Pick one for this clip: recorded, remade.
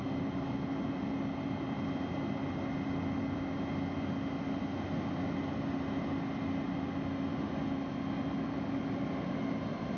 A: recorded